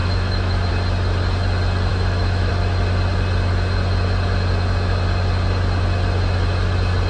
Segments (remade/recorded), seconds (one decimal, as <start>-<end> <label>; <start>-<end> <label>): 0.0-0.7 remade; 0.7-1.9 recorded; 1.9-2.5 remade; 2.5-7.1 recorded